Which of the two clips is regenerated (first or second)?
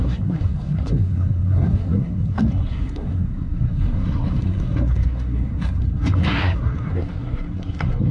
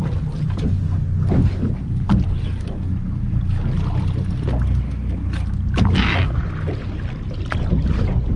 first